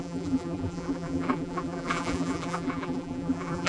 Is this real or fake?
fake